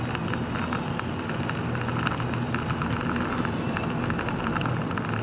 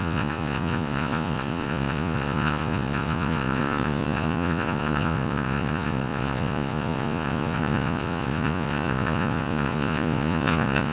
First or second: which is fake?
second